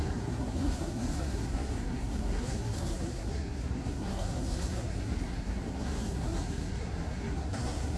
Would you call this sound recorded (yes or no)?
no